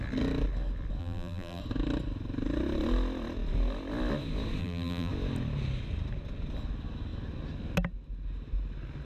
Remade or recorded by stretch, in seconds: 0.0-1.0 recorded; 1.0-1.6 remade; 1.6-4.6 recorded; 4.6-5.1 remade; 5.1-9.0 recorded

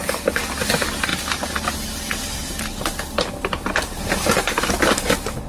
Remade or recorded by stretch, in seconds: 0.0-1.1 recorded; 1.1-2.6 remade; 2.6-5.5 recorded

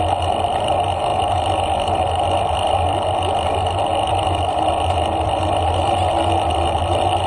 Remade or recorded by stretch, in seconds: 0.0-1.1 recorded; 1.1-3.0 remade; 3.0-3.9 recorded; 3.9-6.1 remade; 6.1-7.3 recorded

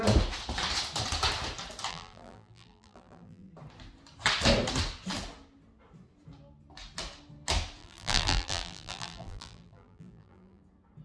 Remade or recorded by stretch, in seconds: 0.0-1.9 recorded; 1.9-3.5 remade; 3.5-7.8 recorded; 7.8-10.6 remade; 10.6-11.0 recorded

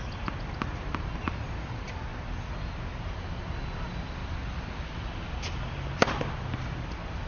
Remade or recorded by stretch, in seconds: 0.0-2.1 remade; 2.1-3.4 recorded; 3.4-4.2 remade; 4.2-6.4 recorded; 6.4-7.3 remade

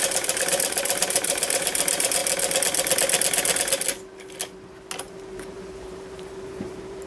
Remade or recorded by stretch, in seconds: 0.0-2.2 remade; 2.2-5.1 recorded; 5.1-7.1 remade

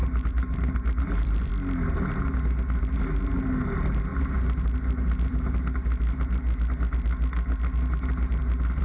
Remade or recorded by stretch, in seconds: 0.0-1.5 remade; 1.5-8.8 recorded

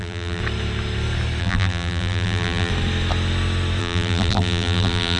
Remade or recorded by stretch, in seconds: 0.0-0.4 remade; 0.4-1.4 recorded; 1.4-2.7 remade; 2.7-3.8 recorded; 3.8-5.2 remade